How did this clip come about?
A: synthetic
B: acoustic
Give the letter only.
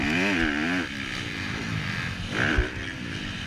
B